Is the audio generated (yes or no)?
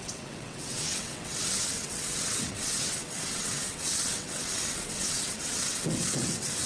yes